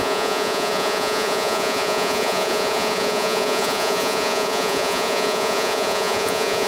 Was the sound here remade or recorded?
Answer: remade